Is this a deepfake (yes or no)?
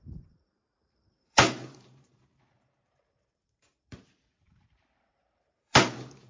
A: yes